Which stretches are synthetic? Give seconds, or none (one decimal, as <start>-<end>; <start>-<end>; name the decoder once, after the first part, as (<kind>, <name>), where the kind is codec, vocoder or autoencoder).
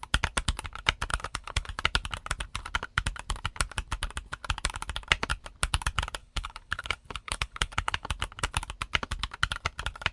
1.1-1.7 (codec, HILCodec); 6.2-8.1